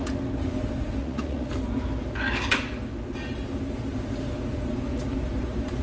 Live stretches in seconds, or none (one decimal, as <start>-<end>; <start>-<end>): 0.0-1.0; 1.5-5.8